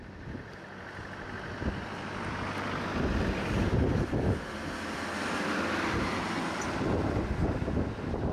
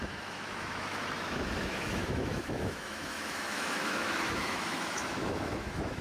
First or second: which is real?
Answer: first